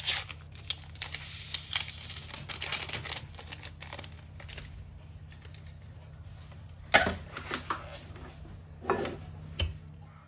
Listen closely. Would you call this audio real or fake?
real